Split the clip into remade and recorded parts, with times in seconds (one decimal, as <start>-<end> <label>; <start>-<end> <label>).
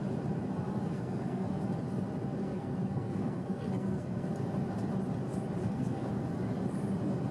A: 0.0-0.9 recorded; 0.9-1.6 remade; 1.6-2.4 recorded; 2.4-4.3 remade; 4.3-5.6 recorded; 5.6-6.1 remade; 6.1-7.3 recorded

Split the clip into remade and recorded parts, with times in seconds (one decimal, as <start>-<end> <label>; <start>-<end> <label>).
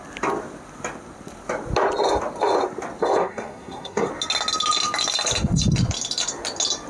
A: 0.0-3.2 recorded; 3.2-4.1 remade; 4.1-6.9 recorded